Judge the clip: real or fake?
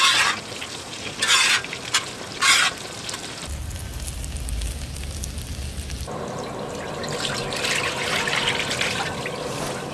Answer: real